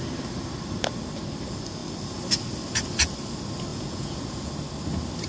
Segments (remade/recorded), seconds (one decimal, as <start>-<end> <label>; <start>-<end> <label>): 0.0-3.7 recorded; 3.7-4.5 remade; 4.5-5.3 recorded